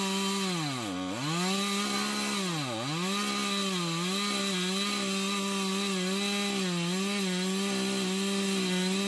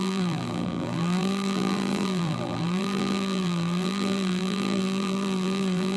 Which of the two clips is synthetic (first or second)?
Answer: second